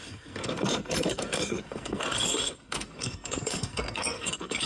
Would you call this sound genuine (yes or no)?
no